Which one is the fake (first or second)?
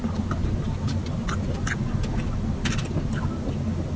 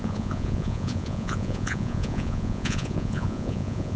second